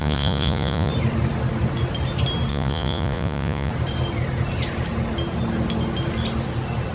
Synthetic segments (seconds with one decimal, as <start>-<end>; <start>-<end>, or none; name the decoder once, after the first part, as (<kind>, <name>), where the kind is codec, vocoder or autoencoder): 0.0-0.9 (vocoder, Vocos); 2.5-3.7